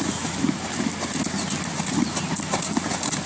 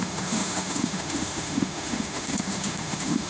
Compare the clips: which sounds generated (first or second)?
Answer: second